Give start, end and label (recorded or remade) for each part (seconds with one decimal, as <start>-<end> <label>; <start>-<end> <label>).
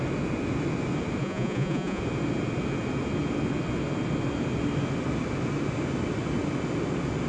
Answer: 0.0-1.2 recorded; 1.2-2.0 remade; 2.0-7.3 recorded